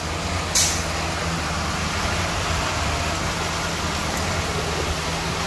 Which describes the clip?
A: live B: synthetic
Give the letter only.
A